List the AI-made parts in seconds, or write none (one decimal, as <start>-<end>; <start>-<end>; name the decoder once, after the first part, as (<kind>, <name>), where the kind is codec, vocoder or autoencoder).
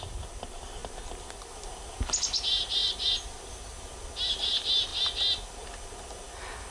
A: none